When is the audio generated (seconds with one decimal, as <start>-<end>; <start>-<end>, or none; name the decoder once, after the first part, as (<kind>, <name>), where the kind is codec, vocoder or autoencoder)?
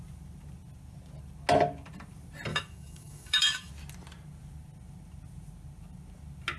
2.5-3.7 (autoencoder, DAC-VAE)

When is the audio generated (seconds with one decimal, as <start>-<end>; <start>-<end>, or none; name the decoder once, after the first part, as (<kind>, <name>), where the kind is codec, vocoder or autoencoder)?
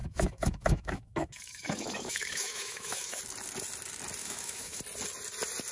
0.0-3.2 (autoencoder, DAC-VAE); 4.2-4.8